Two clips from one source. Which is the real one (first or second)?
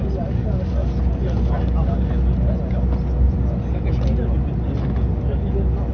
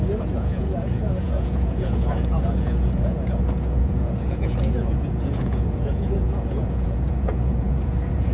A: first